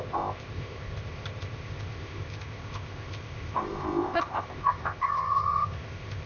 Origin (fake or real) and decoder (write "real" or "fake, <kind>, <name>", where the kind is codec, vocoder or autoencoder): fake, codec, ZipCodec